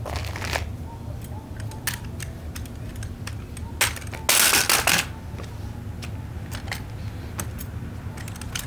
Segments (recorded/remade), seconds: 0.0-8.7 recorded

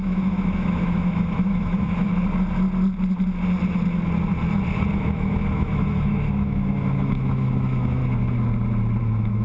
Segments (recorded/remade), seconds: 0.0-2.1 remade; 2.1-4.9 recorded; 4.9-8.0 remade; 8.0-9.0 recorded; 9.0-9.4 remade

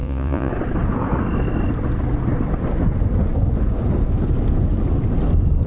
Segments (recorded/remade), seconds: 0.0-0.5 remade; 0.5-5.7 recorded